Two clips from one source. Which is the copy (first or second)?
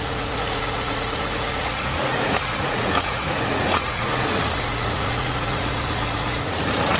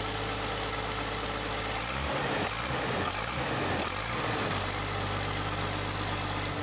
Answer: first